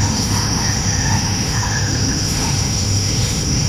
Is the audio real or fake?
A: fake